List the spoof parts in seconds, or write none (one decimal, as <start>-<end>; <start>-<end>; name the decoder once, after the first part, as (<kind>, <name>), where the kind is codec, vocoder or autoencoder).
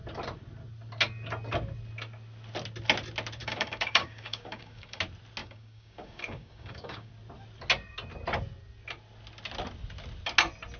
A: 3.4-5.0 (codec, DAC); 5.4-7.1